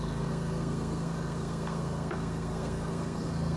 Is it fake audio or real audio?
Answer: fake